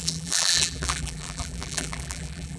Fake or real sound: fake